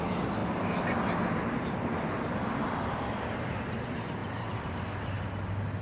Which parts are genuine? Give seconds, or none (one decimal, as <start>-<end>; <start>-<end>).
0.0-5.8